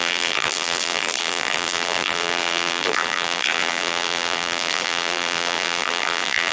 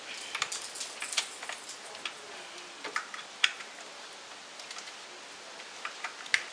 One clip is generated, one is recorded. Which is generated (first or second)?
first